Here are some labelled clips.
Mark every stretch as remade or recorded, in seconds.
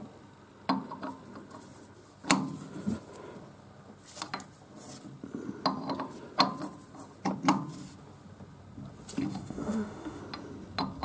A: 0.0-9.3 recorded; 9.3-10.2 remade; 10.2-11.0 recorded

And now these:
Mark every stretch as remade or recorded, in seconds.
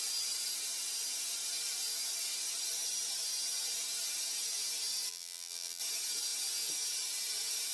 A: 0.0-5.1 recorded; 5.1-5.8 remade; 5.8-7.7 recorded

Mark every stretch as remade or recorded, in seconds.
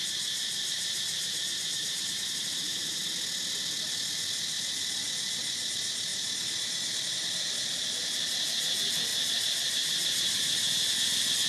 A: 0.0-3.0 remade; 3.0-9.1 recorded; 9.1-10.9 remade; 10.9-11.5 recorded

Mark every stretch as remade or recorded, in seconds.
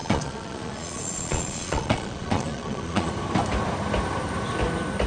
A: 0.0-3.1 remade; 3.1-5.1 recorded